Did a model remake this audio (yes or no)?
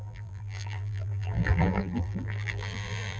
yes